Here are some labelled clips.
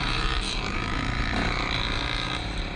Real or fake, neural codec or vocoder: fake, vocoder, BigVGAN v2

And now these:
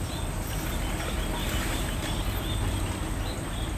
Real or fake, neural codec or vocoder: real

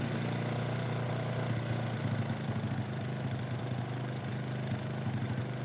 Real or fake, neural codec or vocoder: real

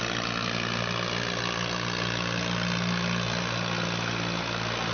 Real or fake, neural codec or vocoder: real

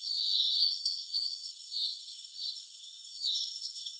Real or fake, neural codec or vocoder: fake, codec, SNAC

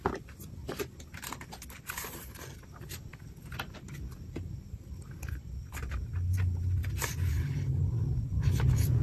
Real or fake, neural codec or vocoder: real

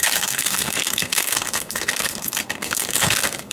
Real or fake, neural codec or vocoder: fake, codec, SNAC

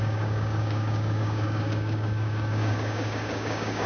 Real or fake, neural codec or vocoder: fake, codec, DAC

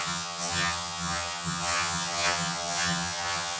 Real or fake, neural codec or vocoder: fake, vocoder, HiFi-GAN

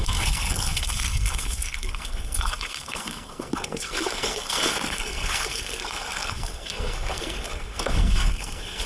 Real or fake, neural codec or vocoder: fake, codec, SNAC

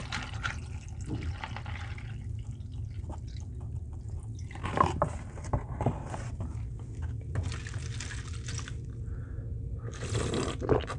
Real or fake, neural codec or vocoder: real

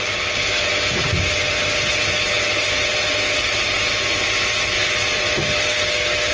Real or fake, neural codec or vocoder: real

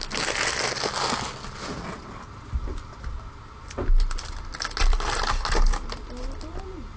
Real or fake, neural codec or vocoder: real